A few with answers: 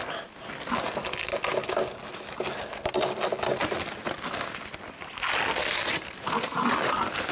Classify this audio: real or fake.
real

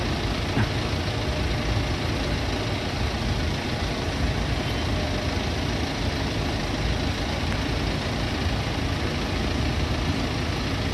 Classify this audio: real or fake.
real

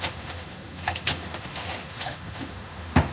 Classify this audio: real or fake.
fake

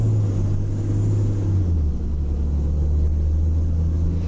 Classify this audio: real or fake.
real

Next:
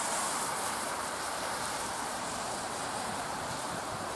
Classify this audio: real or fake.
fake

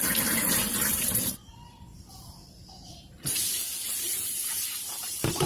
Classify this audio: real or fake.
fake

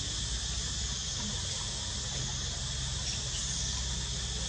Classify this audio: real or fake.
real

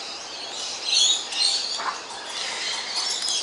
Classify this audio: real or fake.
real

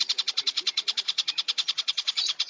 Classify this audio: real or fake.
fake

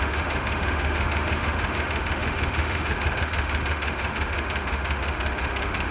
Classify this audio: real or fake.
fake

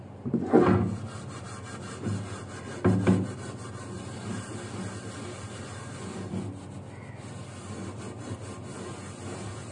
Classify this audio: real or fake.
real